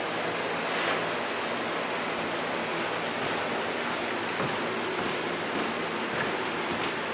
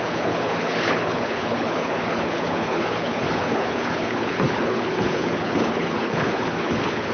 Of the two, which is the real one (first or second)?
first